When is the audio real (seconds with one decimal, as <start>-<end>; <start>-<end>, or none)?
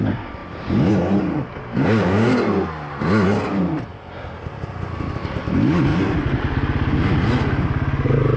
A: 0.0-1.6; 2.3-8.4